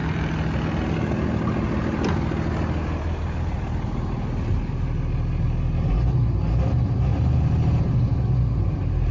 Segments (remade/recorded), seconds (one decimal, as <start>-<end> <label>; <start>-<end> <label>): 0.0-0.6 remade; 0.6-9.1 recorded